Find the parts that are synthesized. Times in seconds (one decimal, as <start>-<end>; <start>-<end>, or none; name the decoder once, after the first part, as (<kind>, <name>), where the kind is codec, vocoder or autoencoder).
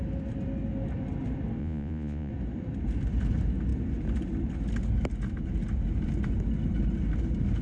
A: 1.6-2.3 (vocoder, Vocos)